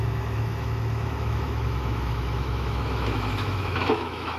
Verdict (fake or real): fake